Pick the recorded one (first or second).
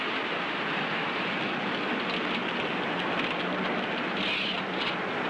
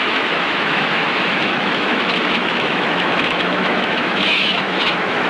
first